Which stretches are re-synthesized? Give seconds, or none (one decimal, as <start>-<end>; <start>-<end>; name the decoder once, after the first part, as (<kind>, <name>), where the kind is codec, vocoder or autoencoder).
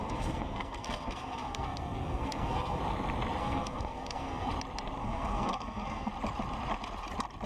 0.0-2.8 (codec, SNAC); 3.4-4.5; 5.0-6.1